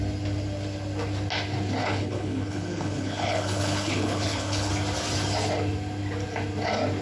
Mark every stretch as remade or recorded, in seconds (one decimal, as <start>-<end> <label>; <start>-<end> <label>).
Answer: 0.0-1.8 recorded; 1.8-4.7 remade; 4.7-7.0 recorded